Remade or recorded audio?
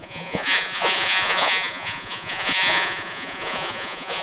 remade